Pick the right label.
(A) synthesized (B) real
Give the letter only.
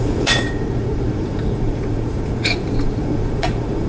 A